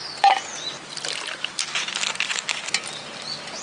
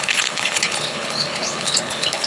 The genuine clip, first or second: first